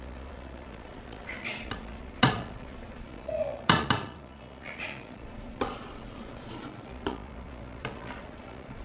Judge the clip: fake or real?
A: fake